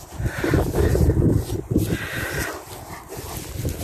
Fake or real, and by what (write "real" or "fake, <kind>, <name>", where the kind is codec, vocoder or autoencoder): real